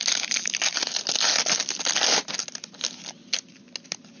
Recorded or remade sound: recorded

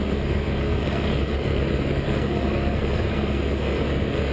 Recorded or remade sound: remade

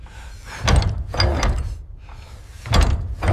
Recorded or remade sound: recorded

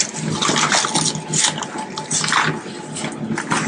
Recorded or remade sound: recorded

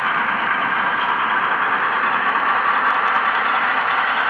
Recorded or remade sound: recorded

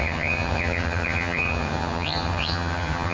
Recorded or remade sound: remade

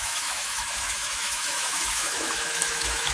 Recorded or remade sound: remade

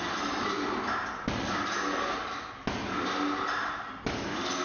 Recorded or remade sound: recorded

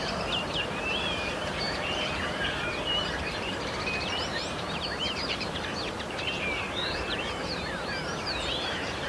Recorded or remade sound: remade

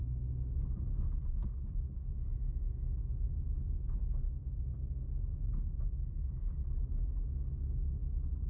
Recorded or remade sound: recorded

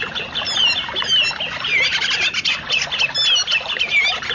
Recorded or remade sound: recorded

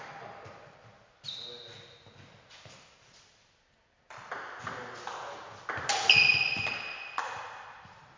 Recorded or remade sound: recorded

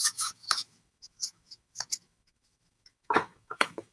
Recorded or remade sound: remade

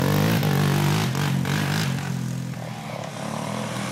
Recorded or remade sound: recorded